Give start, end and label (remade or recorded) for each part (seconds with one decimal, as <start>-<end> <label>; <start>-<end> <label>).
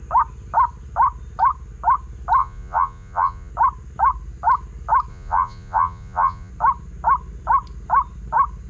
0.0-2.4 recorded; 2.4-3.5 remade; 3.5-5.1 recorded; 5.1-6.5 remade; 6.5-8.7 recorded